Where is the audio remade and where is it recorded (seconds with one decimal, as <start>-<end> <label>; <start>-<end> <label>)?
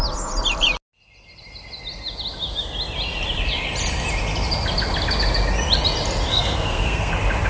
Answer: 0.0-6.3 recorded; 6.3-7.1 remade; 7.1-7.5 recorded